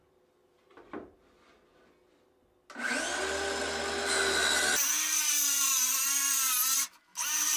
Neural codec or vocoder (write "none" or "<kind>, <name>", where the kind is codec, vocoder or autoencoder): none